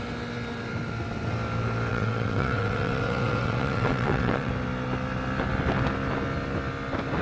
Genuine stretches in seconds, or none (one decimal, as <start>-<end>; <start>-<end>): 0.0-1.9; 4.5-7.2